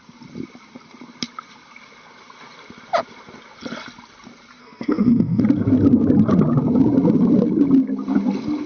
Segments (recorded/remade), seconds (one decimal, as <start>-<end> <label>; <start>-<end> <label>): 0.0-4.6 recorded; 4.6-5.4 remade; 5.4-8.7 recorded